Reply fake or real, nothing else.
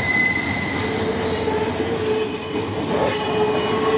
real